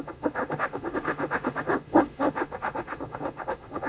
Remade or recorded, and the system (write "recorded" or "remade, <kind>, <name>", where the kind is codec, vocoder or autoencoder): remade, autoencoder, DAC-VAE